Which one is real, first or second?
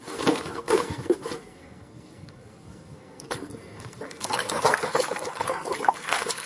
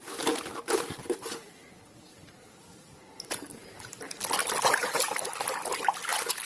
second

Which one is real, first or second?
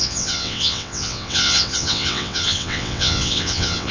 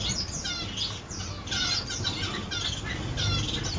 second